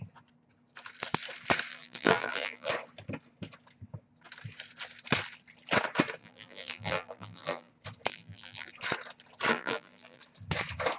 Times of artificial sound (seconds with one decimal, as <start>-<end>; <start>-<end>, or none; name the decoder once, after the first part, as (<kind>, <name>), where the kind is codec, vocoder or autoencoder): 1.7-2.7 (vocoder, BigVGAN v2); 6.2-7.7; 8.1-8.7; 9.5-10.2

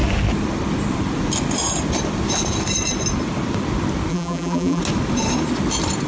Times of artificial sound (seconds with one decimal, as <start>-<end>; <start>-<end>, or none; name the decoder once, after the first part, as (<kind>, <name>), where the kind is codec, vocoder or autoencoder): 4.1-4.8 (vocoder, BigVGAN v2)

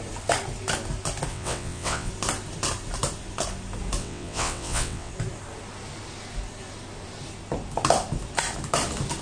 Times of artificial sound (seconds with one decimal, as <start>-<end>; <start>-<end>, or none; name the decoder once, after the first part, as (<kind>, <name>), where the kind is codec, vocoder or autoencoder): 1.3-2.1 (vocoder, WaveNeXt); 4.0-5.1